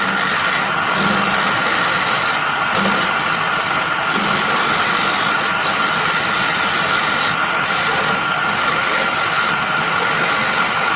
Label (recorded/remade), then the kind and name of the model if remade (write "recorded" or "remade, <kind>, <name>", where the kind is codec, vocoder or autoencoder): recorded